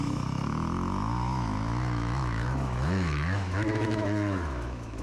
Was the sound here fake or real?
fake